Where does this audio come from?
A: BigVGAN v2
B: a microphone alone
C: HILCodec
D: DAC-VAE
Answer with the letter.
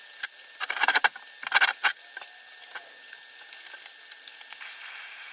B